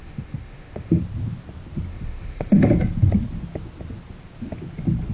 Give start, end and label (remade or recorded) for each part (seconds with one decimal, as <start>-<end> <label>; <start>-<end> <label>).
0.0-1.0 remade; 1.0-1.9 recorded; 1.9-2.6 remade; 2.6-5.1 recorded